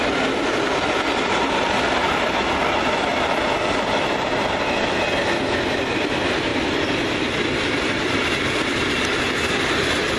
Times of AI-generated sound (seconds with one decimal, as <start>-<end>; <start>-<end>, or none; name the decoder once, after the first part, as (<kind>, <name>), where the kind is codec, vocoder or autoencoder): none